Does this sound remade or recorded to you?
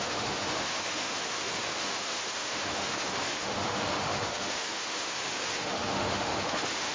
remade